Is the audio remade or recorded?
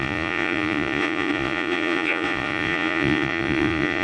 remade